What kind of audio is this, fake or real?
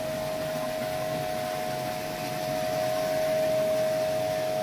real